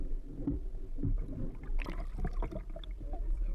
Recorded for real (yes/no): yes